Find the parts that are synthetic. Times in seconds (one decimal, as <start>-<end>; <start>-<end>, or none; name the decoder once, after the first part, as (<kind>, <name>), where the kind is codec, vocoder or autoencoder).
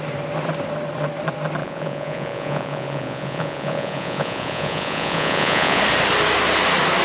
1.6-5.8 (vocoder, Vocos)